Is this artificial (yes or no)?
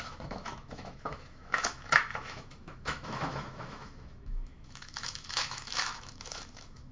yes